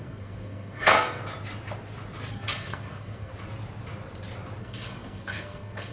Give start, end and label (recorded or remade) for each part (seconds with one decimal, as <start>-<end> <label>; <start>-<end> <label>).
0.0-1.2 remade; 1.2-2.3 recorded; 2.3-3.3 remade; 3.3-4.6 recorded; 4.6-5.9 remade